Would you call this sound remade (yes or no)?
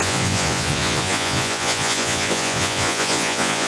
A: yes